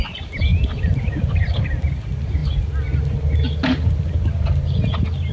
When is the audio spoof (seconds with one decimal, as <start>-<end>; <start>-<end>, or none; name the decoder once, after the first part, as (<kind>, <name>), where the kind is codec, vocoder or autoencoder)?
none